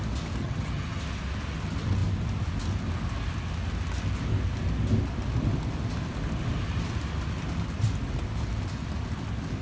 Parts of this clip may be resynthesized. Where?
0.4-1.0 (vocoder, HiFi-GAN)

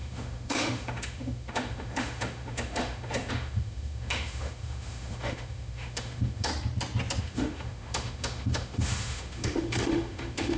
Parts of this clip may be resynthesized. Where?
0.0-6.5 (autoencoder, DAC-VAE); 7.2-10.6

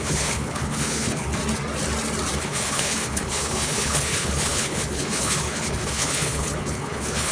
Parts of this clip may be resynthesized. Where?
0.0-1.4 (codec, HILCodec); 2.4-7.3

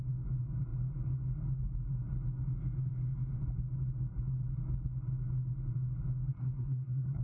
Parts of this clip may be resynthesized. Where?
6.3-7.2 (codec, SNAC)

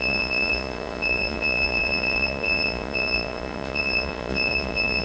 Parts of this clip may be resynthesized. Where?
0.0-5.0 (vocoder, Vocos)